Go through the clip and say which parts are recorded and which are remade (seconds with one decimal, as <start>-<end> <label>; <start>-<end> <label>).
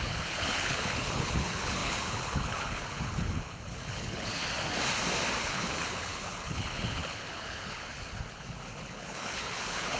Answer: 0.0-4.4 remade; 4.4-5.4 recorded; 5.4-10.0 remade